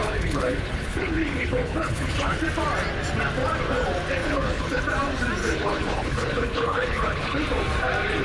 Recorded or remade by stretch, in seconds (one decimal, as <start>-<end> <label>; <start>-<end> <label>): 0.0-2.4 remade; 2.4-4.2 recorded; 4.2-4.8 remade; 4.8-5.4 recorded; 5.4-7.4 remade; 7.4-8.2 recorded